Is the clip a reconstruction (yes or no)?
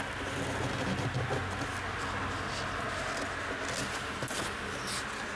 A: no